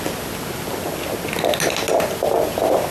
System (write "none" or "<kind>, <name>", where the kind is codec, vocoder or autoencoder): none